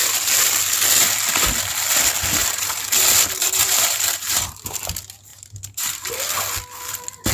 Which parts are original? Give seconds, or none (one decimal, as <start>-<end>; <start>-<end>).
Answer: 0.6-2.4; 3.0-3.4; 4.8-5.3; 6.1-7.3